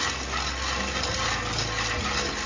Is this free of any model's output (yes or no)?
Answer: yes